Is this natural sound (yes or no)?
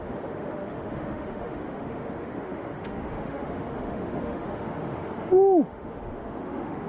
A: no